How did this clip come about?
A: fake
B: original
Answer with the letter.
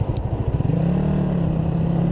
B